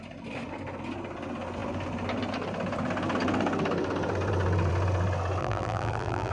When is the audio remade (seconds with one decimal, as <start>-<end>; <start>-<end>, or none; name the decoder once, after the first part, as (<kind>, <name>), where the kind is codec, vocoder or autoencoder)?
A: 5.4-6.3 (vocoder, BigVGAN v2)